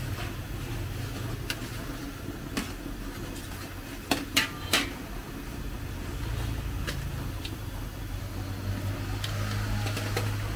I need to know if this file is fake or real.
real